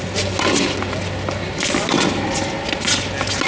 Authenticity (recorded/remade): recorded